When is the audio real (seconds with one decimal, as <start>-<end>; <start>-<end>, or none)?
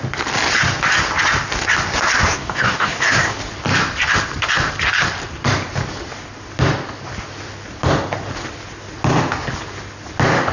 0.0-2.3; 3.4-10.5